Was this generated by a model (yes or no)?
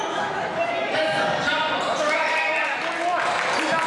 no